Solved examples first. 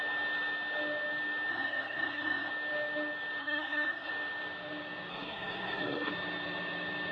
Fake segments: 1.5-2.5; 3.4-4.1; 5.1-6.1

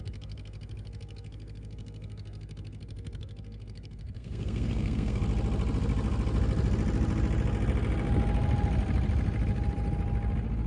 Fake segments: 0.0-5.2

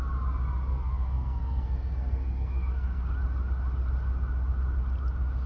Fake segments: 0.7-3.1